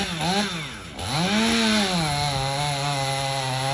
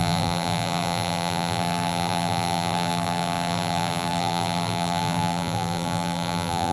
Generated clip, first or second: second